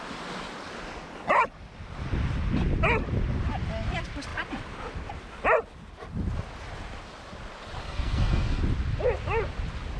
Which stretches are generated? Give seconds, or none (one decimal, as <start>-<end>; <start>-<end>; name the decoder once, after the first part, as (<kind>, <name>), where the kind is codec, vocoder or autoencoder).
7.8-8.6 (codec, SNAC)

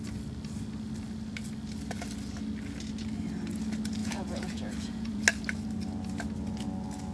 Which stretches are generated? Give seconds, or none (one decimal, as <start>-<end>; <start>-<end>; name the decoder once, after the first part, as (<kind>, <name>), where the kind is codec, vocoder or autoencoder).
4.0-5.2 (vocoder, Vocos)

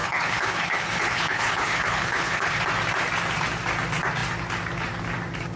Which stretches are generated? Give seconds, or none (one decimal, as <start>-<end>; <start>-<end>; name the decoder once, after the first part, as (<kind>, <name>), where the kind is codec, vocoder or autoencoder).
0.0-2.6 (codec, HILCodec)